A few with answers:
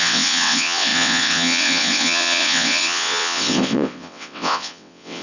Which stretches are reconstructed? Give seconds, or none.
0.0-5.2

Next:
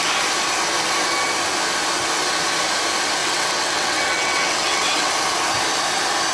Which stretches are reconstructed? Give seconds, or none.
3.2-5.1

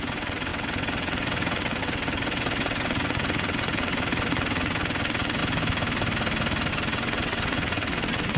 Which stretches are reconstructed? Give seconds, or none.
0.0-5.4; 6.7-8.4

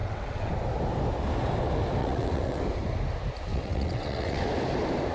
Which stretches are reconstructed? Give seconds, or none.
0.0-0.5; 2.0-2.6; 3.5-4.4

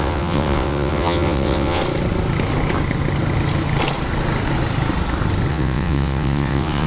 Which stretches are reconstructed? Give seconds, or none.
0.0-1.8; 5.5-6.9

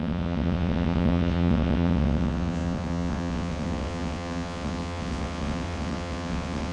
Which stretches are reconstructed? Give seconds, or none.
0.0-6.7